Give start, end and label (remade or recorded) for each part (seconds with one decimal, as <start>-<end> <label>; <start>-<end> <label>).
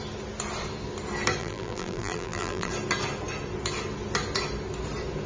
0.0-1.4 recorded; 1.4-2.7 remade; 2.7-5.3 recorded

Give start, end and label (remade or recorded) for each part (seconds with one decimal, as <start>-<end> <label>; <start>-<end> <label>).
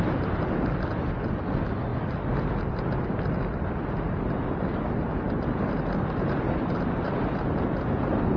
0.0-8.4 recorded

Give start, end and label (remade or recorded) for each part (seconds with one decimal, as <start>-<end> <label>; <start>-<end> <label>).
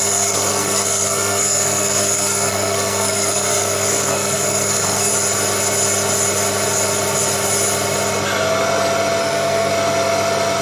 0.0-5.1 remade; 5.1-9.2 recorded; 9.2-9.7 remade; 9.7-10.6 recorded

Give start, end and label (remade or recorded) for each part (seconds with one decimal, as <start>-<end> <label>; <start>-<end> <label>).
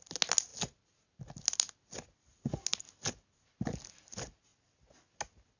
0.0-5.6 recorded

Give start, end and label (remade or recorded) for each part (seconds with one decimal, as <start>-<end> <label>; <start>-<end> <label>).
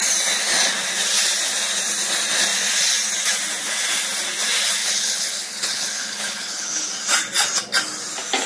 0.0-4.8 recorded; 4.8-6.9 remade; 6.9-8.5 recorded